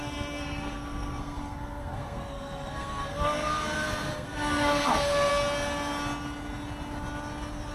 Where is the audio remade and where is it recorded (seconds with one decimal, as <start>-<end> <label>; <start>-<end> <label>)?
0.0-5.3 remade; 5.3-7.7 recorded